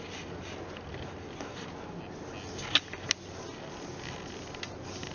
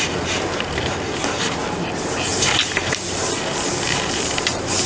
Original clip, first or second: first